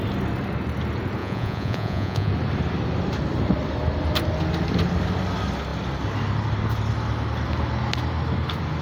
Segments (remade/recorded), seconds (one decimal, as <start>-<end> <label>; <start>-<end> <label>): 0.0-1.2 recorded; 1.2-2.3 remade; 2.3-8.8 recorded